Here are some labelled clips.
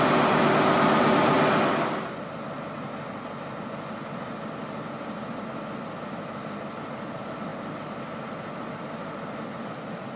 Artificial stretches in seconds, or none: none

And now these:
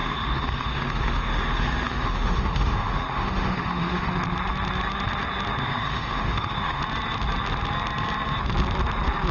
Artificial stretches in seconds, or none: 0.0-4.1; 5.6-6.8

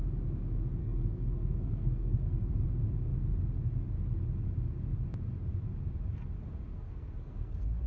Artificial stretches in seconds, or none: 0.8-2.5; 6.7-7.9

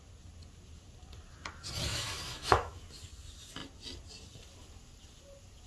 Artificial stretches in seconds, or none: 1.9-2.8

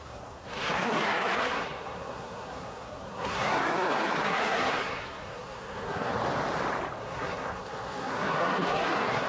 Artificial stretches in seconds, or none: 0.0-6.1; 7.0-9.3